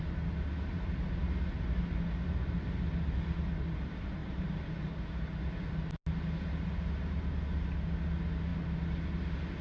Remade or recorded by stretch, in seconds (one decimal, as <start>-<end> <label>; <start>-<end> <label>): 0.0-4.2 recorded; 4.2-5.2 remade; 5.2-9.6 recorded